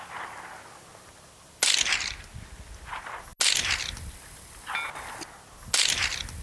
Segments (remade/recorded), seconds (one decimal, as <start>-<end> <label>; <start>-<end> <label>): 0.0-6.4 recorded